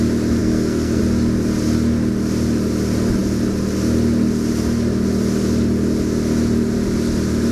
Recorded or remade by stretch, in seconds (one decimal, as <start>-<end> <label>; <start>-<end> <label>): 0.0-0.4 recorded; 0.4-1.0 remade; 1.0-7.5 recorded